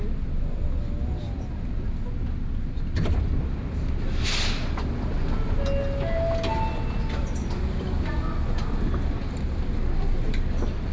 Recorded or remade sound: recorded